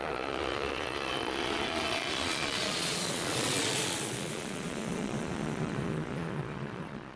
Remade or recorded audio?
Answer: remade